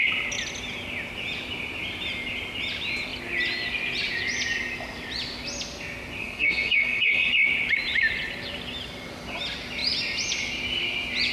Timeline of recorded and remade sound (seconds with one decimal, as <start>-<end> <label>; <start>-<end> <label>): 0.0-6.2 recorded; 6.2-7.3 remade; 7.3-11.3 recorded